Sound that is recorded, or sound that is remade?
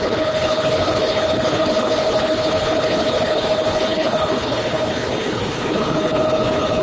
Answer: remade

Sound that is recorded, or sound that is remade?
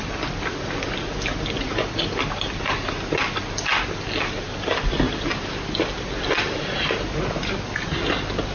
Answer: recorded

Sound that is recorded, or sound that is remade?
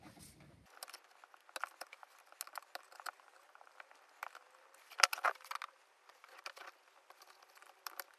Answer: recorded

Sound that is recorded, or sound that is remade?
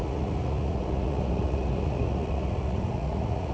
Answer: remade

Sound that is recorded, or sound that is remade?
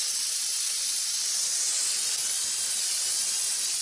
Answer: recorded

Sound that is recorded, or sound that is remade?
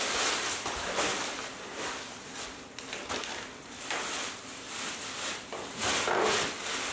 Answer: recorded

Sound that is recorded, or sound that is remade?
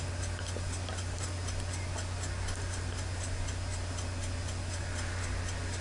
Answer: recorded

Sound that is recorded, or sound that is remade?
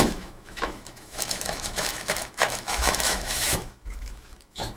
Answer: remade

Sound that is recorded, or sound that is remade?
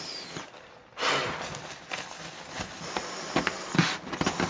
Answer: recorded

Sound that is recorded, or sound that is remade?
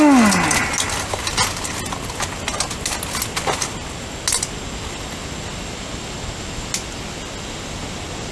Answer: recorded